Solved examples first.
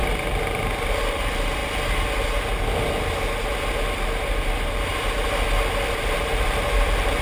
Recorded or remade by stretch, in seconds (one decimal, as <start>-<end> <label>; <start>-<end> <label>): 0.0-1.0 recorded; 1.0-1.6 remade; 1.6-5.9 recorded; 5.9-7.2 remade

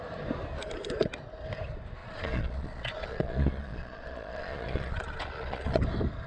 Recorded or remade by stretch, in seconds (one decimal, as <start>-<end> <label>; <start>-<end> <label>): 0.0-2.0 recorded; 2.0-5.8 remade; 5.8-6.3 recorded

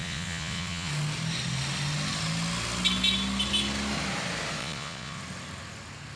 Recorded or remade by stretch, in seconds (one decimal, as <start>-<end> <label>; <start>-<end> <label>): 0.0-0.9 remade; 0.9-4.6 recorded; 4.6-5.2 remade; 5.2-6.2 recorded